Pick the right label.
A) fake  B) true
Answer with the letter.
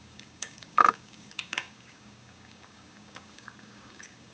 A